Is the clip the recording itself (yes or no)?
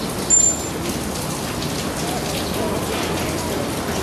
yes